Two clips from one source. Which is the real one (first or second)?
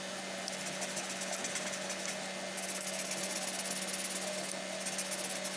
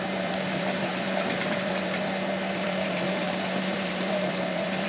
first